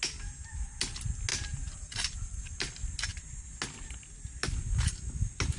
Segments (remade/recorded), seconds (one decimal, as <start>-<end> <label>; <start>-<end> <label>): 0.0-1.3 recorded; 1.3-2.4 remade; 2.4-5.6 recorded